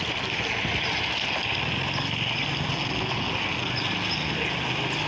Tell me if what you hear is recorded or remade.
recorded